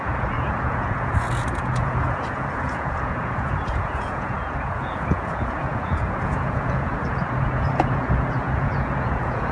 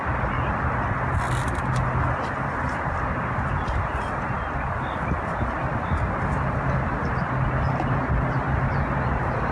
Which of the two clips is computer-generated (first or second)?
first